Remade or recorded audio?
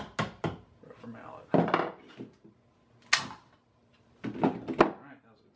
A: recorded